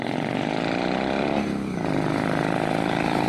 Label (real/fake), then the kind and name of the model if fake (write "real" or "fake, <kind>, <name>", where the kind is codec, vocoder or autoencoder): real